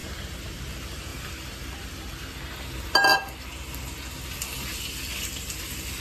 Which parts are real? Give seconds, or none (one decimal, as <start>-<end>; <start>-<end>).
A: 0.6-6.0